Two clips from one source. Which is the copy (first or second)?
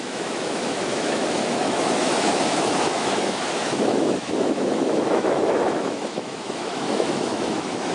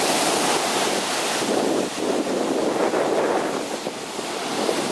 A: first